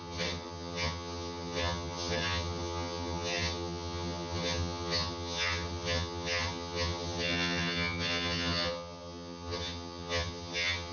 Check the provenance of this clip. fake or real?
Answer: fake